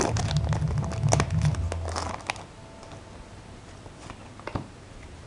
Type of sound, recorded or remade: recorded